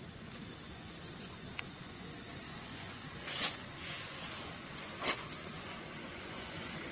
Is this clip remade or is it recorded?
remade